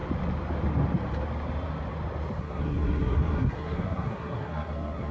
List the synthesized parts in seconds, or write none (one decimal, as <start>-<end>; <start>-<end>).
2.4-5.1